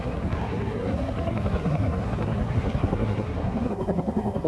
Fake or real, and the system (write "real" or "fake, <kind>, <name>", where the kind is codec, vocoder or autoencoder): fake, codec, SNAC